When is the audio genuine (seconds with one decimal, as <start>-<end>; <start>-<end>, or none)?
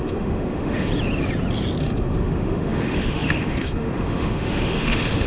0.9-1.8